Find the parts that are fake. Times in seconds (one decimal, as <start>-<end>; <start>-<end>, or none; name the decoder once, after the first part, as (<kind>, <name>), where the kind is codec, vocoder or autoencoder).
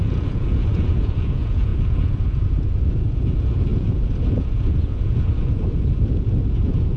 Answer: 0.0-7.0 (vocoder, Vocos)